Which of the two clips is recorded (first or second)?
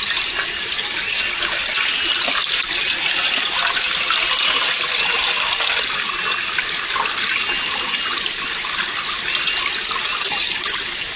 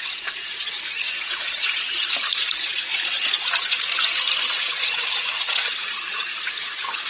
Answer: first